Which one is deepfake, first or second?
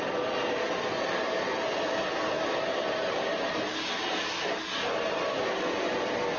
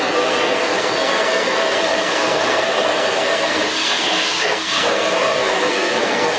second